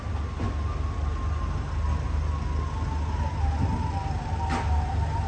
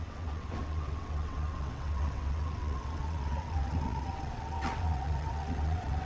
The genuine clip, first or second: first